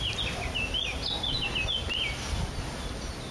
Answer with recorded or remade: recorded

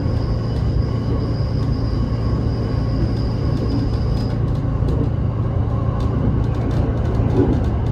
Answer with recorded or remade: recorded